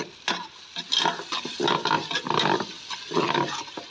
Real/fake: real